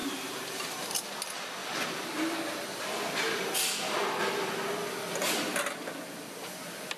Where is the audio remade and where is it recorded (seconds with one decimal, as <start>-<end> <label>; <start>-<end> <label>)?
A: 0.0-1.1 remade; 1.1-1.6 recorded; 1.6-2.4 remade; 2.4-7.0 recorded